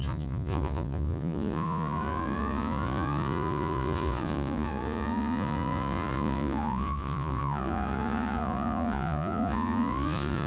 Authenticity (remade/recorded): remade